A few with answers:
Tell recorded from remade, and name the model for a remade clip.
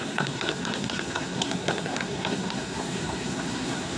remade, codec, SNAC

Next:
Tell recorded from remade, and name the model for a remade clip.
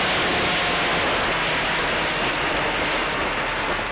recorded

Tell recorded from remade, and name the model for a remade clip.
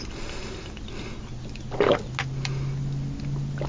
recorded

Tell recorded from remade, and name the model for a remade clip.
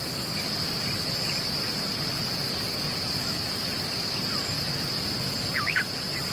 recorded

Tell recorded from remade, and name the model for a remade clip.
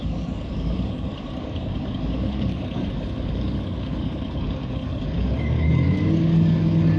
remade, codec, DAC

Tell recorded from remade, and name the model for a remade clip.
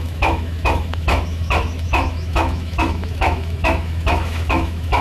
remade, autoencoder, DAC-VAE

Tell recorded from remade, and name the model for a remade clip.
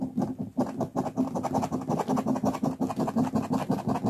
recorded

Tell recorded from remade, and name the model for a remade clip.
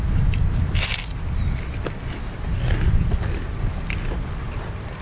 recorded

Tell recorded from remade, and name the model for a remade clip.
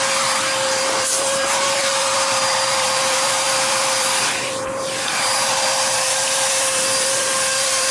remade, vocoder, BigVGAN v2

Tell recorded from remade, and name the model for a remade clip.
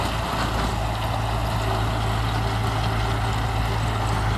recorded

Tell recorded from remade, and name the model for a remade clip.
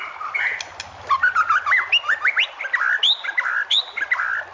recorded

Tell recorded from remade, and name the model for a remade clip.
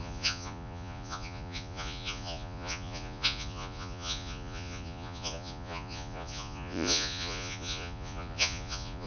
remade, vocoder, Vocos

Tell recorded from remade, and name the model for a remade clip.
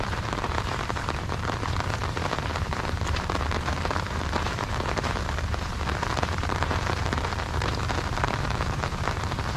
remade, vocoder, BigVGAN v2